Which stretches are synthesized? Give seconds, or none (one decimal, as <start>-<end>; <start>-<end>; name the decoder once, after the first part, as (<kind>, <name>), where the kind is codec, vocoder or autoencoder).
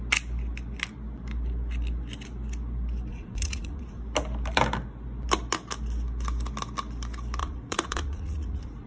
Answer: 3.1-4.0 (vocoder, Vocos); 7.4-8.9